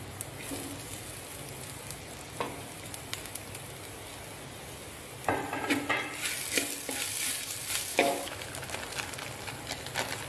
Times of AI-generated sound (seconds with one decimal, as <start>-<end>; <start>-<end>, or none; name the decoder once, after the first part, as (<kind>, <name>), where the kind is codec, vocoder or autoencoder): 7.9-8.5 (autoencoder, DAC-VAE)